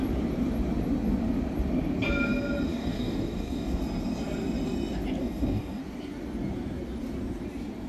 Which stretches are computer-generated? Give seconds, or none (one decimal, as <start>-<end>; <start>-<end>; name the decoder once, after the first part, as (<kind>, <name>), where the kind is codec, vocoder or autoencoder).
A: 2.7-3.8 (codec, DAC); 5.2-5.8